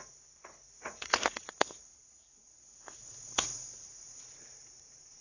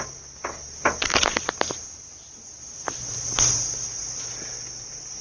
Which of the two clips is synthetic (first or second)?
first